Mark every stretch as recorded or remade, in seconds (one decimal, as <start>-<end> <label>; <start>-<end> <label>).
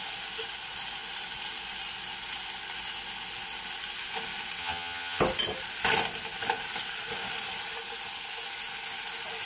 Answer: 0.0-4.6 recorded; 4.6-5.2 remade; 5.2-9.5 recorded